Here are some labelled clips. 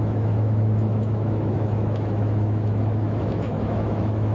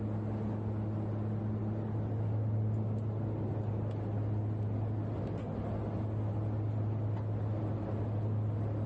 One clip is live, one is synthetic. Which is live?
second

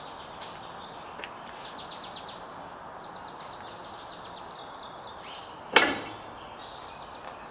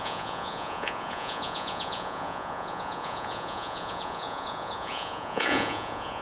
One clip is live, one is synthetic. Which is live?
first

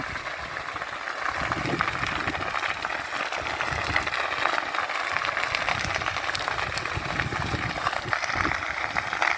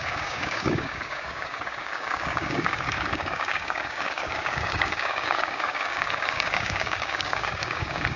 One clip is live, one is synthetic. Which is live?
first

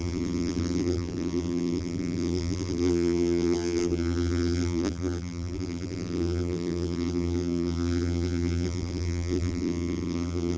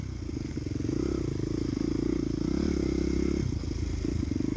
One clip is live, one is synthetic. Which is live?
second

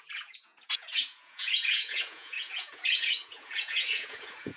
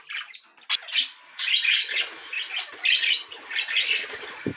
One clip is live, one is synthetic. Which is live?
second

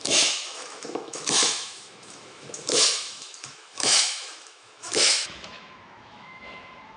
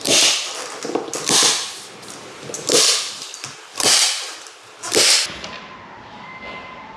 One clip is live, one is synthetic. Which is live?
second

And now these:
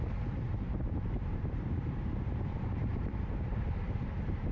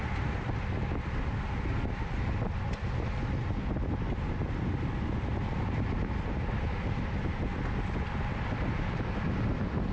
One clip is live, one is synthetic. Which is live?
second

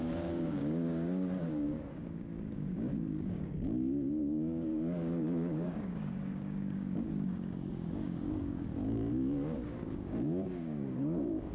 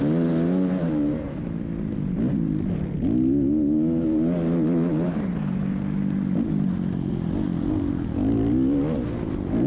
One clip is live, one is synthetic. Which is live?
second